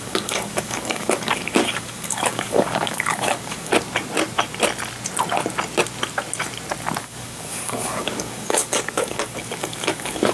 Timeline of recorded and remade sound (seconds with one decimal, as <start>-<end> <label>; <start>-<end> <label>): 0.0-3.7 remade; 3.7-7.0 recorded; 7.0-10.3 remade